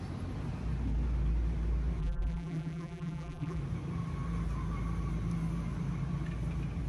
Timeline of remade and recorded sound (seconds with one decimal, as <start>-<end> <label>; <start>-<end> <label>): 0.0-2.0 recorded; 2.0-3.6 remade; 3.6-6.9 recorded